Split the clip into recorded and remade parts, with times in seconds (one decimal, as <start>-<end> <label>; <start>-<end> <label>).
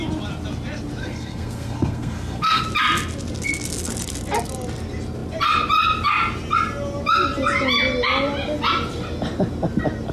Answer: 0.0-1.0 recorded; 1.0-2.6 remade; 2.6-10.1 recorded